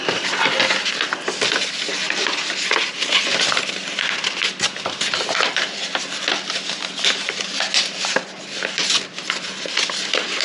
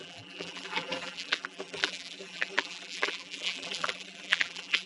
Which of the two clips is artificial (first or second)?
second